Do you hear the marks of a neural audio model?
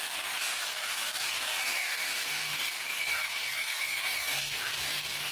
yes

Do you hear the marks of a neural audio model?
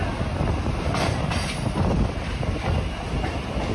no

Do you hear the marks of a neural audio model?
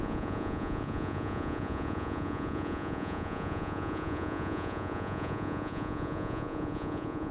yes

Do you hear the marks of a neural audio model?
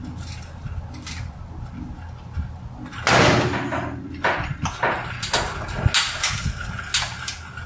no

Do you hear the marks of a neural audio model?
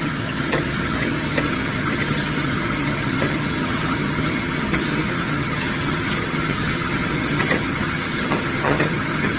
yes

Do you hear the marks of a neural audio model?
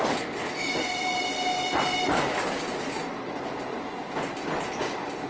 no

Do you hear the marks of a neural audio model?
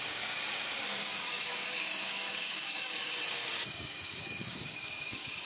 yes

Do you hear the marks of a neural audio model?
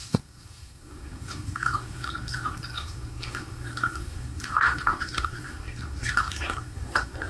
yes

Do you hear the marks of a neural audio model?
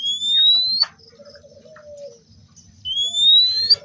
no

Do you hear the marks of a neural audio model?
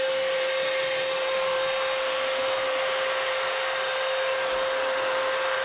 no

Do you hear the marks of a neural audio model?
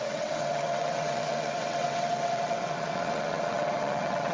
yes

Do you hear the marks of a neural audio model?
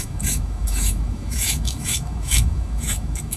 yes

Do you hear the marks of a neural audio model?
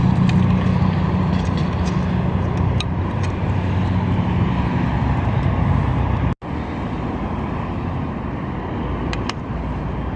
no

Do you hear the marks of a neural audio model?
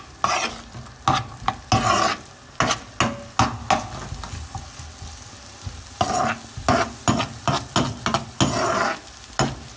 no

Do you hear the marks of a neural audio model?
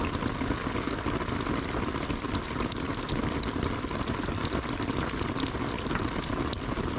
no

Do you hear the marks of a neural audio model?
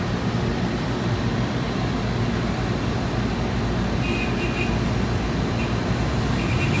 no